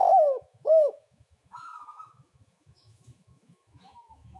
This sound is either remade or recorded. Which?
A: remade